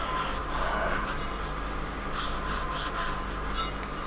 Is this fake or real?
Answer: real